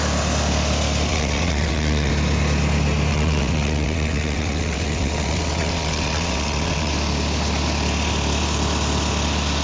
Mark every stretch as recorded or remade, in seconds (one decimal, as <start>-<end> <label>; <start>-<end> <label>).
0.0-1.1 recorded; 1.1-2.1 remade; 2.1-3.1 recorded; 3.1-6.9 remade; 6.9-9.6 recorded